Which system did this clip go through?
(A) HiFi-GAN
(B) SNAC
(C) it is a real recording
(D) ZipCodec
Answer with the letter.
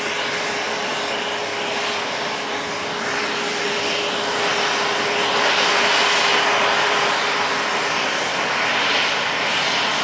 C